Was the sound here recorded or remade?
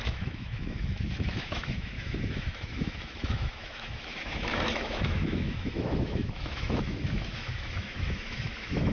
remade